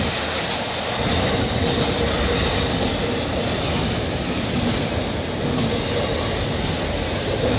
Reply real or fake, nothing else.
real